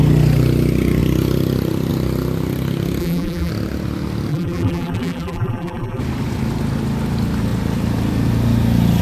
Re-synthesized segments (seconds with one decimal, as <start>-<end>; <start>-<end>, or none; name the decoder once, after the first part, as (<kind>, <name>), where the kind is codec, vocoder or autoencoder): 3.0-3.5 (vocoder, BigVGAN v2); 4.3-6.0

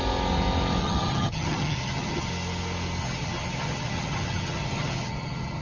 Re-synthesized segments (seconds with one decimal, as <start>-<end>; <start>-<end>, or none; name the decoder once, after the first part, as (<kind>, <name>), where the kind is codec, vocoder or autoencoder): 0.8-2.3 (vocoder, HiFi-GAN); 3.0-5.6

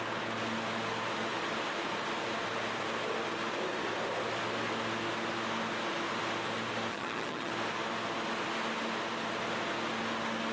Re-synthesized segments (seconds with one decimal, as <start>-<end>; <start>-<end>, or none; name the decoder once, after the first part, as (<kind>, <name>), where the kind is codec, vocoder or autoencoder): 6.9-7.5 (vocoder, HiFi-GAN)

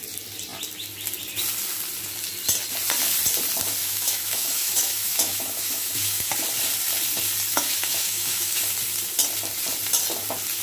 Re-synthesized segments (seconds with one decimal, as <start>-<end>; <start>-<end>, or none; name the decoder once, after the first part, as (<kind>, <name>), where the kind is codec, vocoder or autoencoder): 3.8-6.3 (autoencoder, DAC-VAE); 7.5-8.6

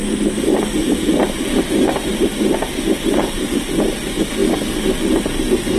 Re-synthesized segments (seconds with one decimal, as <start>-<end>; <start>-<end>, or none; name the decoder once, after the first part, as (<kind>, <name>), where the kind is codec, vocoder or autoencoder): none

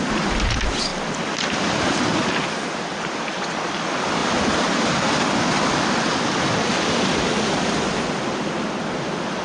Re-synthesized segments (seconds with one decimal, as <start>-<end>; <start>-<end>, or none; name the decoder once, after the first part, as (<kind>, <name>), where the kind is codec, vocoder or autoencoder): 0.9-2.2 (vocoder, BigVGAN v2); 4.2-5.5

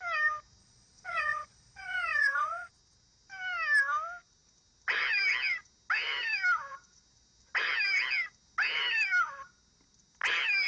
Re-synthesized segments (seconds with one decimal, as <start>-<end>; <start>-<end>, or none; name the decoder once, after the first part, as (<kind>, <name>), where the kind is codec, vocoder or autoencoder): 0.6-2.7 (vocoder, Vocos)

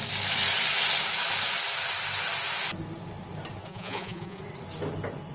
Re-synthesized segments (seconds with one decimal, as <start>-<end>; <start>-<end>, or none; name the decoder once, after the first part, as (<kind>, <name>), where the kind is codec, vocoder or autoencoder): 3.6-4.4 (vocoder, Vocos)